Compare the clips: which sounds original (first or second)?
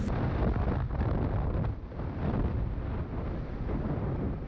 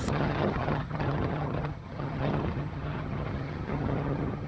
first